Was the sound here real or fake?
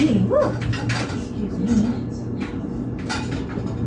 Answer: real